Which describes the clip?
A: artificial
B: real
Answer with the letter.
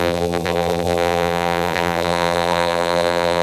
A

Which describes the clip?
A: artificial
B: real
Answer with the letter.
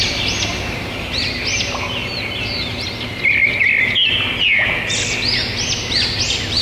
B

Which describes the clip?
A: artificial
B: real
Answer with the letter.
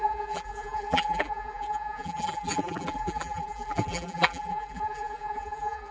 A